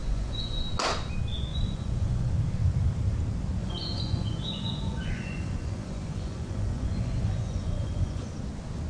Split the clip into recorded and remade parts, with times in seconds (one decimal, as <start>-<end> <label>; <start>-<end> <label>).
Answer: 0.0-0.6 remade; 0.6-1.5 recorded; 1.5-2.3 remade; 2.3-3.6 recorded; 3.6-8.3 remade; 8.3-8.9 recorded